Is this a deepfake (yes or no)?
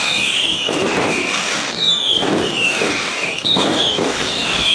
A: yes